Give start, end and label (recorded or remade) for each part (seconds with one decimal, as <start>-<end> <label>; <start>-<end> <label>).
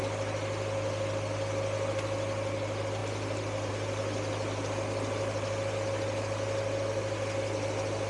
0.0-3.0 recorded; 3.0-3.7 remade; 3.7-8.1 recorded